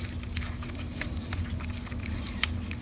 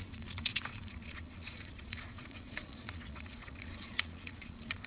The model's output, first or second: second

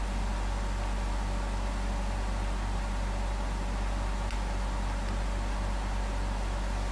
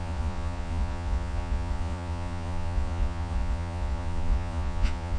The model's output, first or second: second